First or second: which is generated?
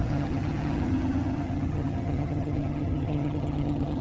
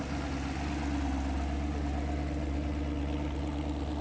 first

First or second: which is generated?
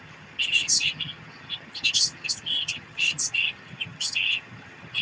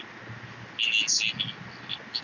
first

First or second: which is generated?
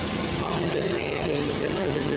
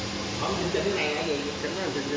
first